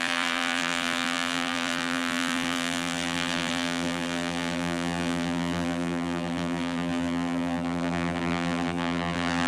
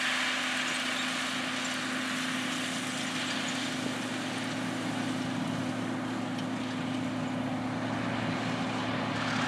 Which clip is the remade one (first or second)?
first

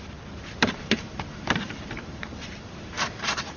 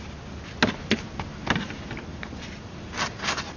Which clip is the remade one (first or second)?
first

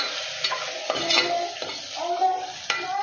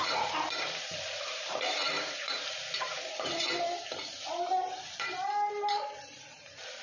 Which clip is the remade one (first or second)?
second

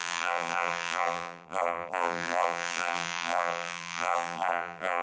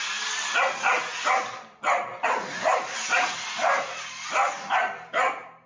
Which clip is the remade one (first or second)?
first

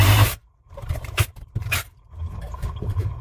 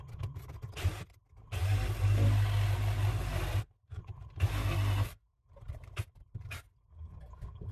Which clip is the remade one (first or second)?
first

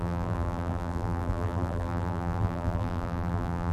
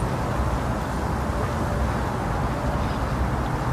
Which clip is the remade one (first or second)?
first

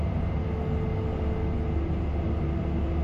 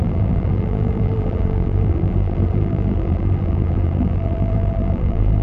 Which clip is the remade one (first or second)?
second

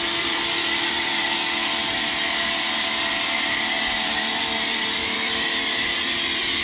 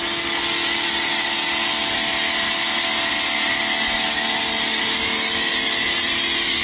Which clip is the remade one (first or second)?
first